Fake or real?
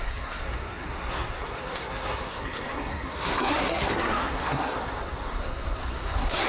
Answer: fake